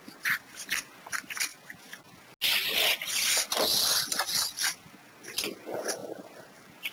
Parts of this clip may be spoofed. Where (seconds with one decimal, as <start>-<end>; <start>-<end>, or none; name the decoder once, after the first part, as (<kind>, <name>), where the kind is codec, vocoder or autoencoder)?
6.0-6.9 (vocoder, BigVGAN v2)